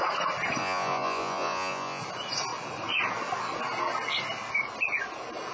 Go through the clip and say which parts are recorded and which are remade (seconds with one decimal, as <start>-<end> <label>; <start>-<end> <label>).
0.0-0.6 recorded; 0.6-2.0 remade; 2.0-5.5 recorded